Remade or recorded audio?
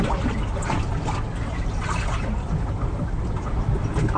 recorded